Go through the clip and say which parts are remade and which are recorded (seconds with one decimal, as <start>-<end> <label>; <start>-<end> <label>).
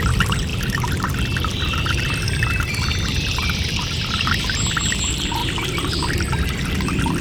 0.0-5.4 remade; 5.4-6.5 recorded; 6.5-7.2 remade